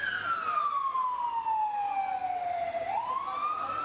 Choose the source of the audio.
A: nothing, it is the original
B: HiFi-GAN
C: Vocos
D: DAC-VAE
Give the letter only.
A